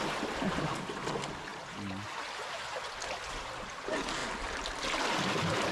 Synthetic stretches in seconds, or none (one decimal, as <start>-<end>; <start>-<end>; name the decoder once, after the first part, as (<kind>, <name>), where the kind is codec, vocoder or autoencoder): none